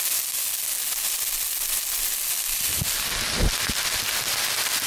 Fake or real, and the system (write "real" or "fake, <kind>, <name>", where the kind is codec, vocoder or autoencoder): real